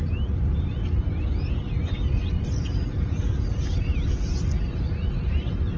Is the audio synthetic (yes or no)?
no